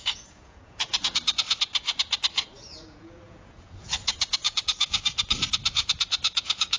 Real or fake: fake